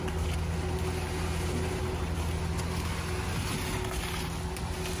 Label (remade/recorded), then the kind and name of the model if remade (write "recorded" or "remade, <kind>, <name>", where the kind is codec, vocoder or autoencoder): recorded